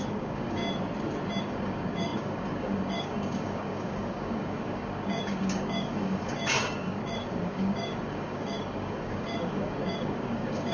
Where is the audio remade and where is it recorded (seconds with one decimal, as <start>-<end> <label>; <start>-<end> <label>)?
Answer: 0.0-0.6 remade; 0.6-1.4 recorded; 1.4-10.7 remade